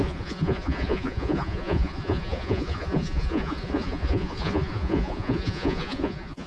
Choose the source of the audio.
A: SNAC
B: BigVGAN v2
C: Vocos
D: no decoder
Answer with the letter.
C